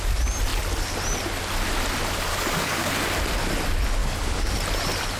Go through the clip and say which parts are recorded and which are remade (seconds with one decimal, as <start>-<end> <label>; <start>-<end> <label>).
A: 0.0-2.3 recorded; 2.3-2.9 remade; 2.9-4.0 recorded; 4.0-4.5 remade; 4.5-5.2 recorded